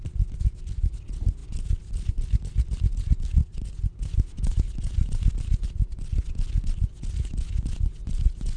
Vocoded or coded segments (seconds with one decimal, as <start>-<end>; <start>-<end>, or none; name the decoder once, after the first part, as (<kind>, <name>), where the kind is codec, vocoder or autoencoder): none